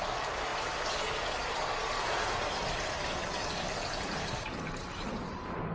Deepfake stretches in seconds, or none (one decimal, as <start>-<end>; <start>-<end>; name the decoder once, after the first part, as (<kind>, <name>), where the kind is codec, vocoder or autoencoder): none